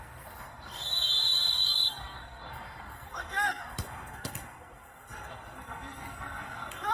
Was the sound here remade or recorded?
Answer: remade